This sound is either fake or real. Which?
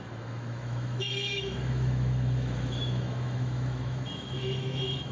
fake